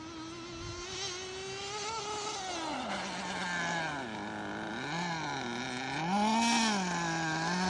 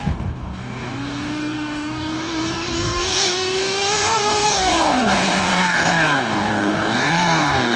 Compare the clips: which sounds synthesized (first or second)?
second